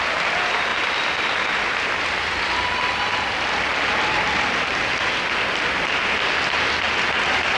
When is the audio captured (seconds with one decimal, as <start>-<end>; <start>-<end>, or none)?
0.0-0.7; 5.3-7.6